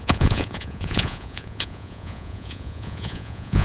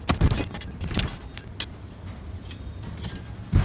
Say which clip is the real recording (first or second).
second